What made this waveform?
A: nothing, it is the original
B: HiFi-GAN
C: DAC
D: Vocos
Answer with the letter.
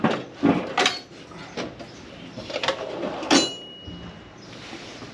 A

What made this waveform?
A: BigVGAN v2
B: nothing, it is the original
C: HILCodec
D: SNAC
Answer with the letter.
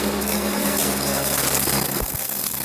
D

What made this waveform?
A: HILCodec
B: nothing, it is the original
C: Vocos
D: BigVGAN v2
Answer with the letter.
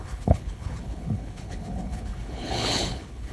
A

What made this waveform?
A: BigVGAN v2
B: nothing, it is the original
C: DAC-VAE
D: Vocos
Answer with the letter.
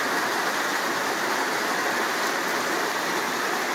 B